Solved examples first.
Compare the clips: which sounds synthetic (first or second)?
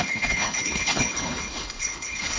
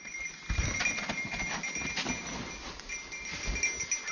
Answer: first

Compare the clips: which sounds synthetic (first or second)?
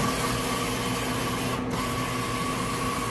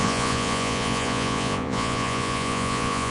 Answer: second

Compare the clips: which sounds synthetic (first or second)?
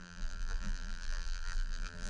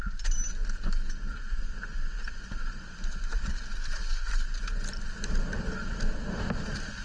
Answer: first